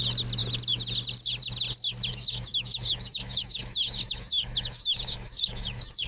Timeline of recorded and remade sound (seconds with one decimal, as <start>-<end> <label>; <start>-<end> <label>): 0.0-2.1 recorded; 2.1-6.1 remade